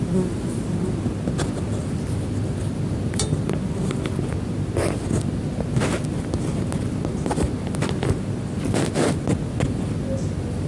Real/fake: real